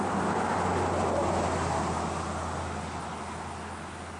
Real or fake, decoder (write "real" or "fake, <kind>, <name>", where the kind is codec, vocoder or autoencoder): real